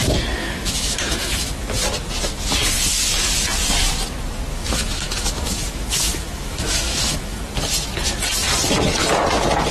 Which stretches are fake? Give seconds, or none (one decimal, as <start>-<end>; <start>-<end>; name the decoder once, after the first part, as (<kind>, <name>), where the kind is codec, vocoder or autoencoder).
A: 0.4-1.7 (autoencoder, DAC-VAE); 4.5-7.4